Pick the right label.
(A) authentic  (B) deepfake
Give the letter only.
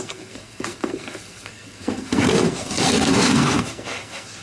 B